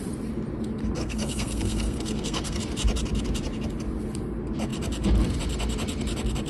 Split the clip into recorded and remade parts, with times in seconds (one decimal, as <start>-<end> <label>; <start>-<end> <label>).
0.0-1.0 recorded; 1.0-2.6 remade; 2.6-6.5 recorded